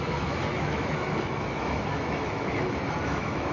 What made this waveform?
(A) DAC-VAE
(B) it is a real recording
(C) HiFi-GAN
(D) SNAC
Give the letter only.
A